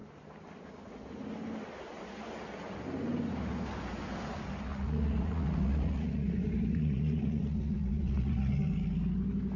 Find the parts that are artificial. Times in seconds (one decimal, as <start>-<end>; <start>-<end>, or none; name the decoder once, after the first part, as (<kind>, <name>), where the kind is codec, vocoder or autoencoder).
4.7-8.5 (vocoder, Vocos)